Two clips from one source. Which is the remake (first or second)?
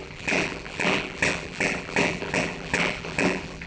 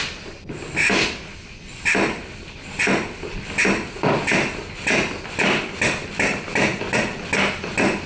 first